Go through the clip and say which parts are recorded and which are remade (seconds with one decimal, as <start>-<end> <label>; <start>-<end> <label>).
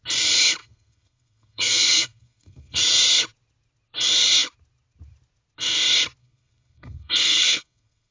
0.0-0.6 recorded; 0.6-2.8 remade; 2.8-6.2 recorded; 6.2-8.1 remade